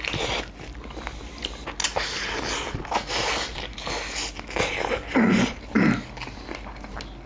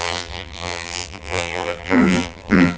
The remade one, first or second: second